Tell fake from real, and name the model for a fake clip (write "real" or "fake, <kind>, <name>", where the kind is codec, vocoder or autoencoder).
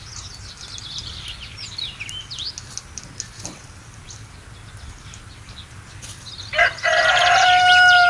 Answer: real